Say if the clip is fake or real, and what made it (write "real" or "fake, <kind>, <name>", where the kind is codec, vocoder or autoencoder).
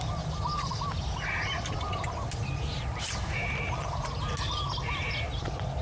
real